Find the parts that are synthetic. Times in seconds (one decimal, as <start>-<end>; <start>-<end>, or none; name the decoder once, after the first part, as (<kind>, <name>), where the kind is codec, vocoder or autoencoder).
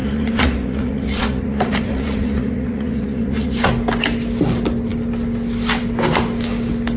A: 0.0-3.7 (vocoder, Vocos)